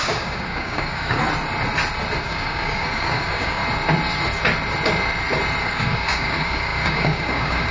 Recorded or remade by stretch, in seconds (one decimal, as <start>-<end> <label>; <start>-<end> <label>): 0.0-1.2 remade; 1.2-2.2 recorded; 2.2-3.6 remade; 3.6-5.6 recorded; 5.6-7.7 remade